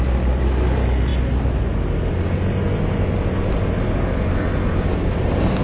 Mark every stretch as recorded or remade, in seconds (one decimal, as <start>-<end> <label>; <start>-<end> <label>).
0.0-5.6 recorded